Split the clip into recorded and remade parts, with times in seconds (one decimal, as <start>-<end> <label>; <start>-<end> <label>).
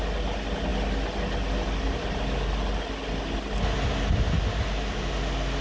0.0-5.6 recorded